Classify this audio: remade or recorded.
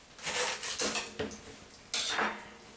recorded